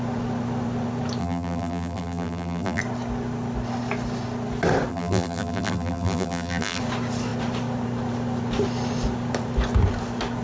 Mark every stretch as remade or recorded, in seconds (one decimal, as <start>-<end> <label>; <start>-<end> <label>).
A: 0.0-1.2 recorded; 1.2-2.8 remade; 2.8-4.9 recorded; 4.9-6.8 remade; 6.8-10.4 recorded